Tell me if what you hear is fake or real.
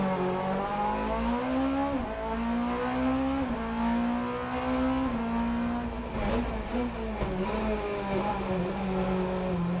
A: real